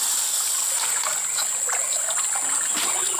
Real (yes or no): yes